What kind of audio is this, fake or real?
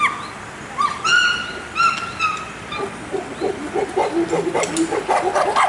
real